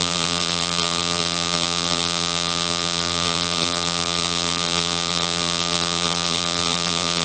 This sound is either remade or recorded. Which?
remade